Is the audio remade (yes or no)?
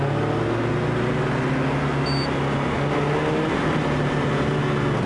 no